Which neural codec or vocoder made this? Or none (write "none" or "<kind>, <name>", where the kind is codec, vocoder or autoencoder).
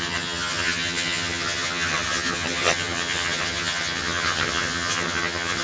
vocoder, HiFi-GAN